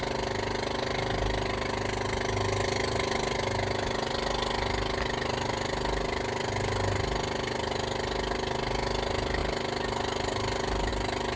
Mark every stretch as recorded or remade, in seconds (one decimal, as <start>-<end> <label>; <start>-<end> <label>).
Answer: 0.0-11.4 recorded